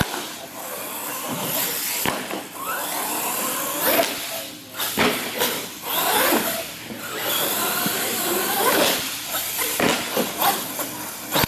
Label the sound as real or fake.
real